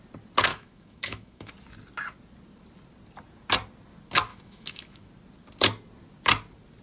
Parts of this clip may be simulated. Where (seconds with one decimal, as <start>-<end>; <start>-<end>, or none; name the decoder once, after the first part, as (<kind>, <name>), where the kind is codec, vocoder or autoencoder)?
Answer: 0.5-1.5 (autoencoder, DAC-VAE); 4.3-5.1